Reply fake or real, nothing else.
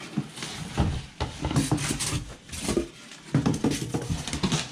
real